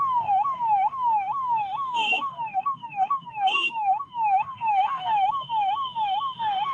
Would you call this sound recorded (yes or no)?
no